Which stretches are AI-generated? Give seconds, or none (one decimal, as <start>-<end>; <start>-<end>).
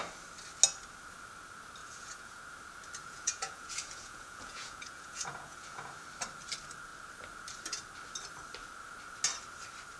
1.8-2.4; 3.0-6.0